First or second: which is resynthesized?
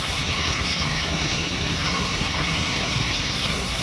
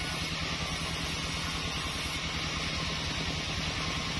first